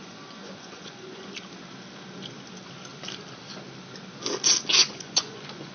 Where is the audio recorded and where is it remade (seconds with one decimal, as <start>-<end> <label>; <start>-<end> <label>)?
0.0-1.3 remade; 1.3-4.7 recorded; 4.7-5.7 remade